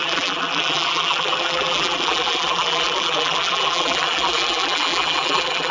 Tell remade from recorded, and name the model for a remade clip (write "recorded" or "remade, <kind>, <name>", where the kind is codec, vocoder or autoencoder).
remade, vocoder, BigVGAN v2